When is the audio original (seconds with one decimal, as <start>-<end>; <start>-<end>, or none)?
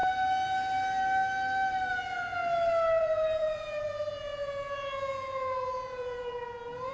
0.0-1.9; 2.4-3.0